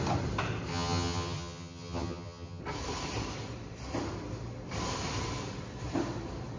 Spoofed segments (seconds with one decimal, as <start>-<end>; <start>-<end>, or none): 0.7-2.6